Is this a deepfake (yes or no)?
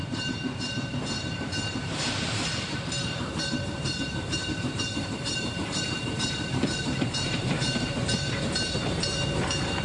yes